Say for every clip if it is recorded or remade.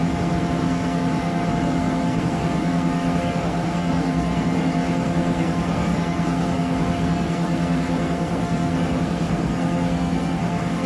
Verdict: remade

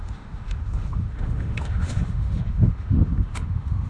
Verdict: remade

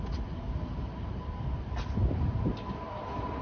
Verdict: recorded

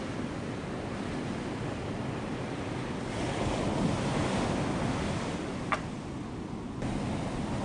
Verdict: recorded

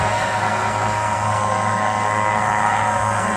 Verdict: remade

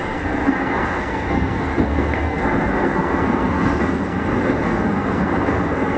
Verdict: remade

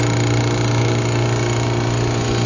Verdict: recorded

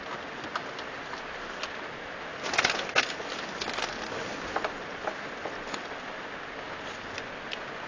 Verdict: recorded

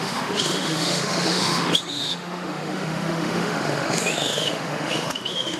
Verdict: remade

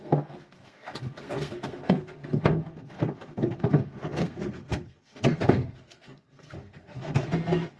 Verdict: remade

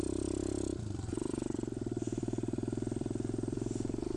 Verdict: remade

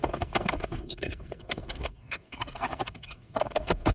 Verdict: remade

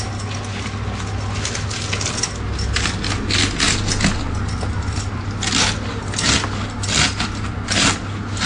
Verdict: recorded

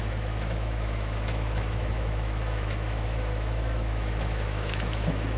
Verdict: remade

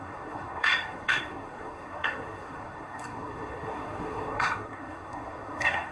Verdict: remade